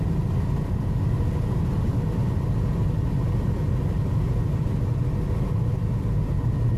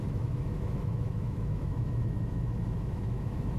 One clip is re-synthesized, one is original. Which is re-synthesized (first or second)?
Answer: second